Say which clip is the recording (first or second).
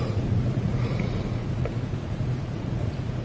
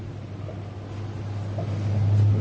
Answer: second